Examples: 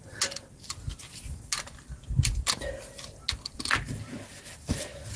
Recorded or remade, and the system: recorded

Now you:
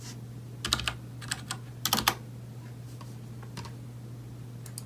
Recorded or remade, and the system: recorded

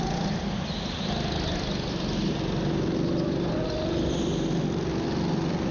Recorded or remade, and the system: recorded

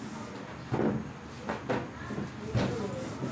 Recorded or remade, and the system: recorded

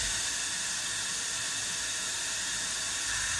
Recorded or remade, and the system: recorded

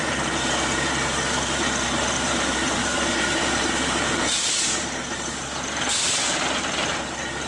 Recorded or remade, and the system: remade, vocoder, BigVGAN v2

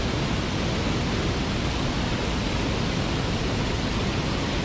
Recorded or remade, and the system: recorded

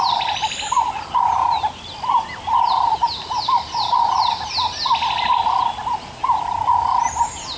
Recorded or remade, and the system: recorded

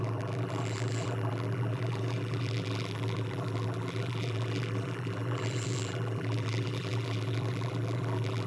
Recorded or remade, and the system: remade, vocoder, BigVGAN v2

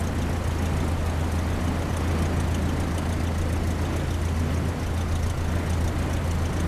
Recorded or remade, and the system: recorded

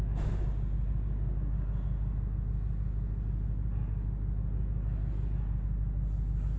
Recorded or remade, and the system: recorded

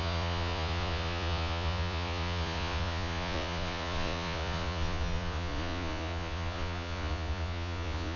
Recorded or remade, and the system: remade, vocoder, Vocos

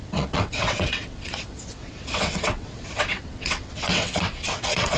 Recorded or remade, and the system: remade, vocoder, WaveNeXt